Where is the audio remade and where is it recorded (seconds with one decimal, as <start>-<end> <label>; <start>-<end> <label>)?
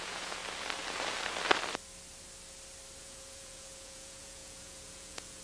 0.0-0.4 remade; 0.4-3.0 recorded; 3.0-5.4 remade